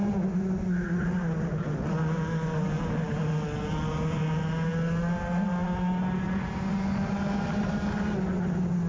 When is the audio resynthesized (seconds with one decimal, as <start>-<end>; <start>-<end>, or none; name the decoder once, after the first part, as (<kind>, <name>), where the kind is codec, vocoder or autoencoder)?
none